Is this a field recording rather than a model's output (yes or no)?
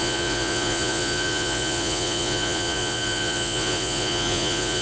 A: no